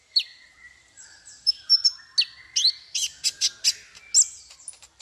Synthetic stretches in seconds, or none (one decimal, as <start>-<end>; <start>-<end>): 0.0-1.7